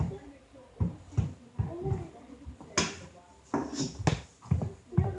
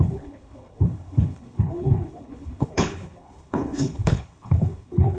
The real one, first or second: first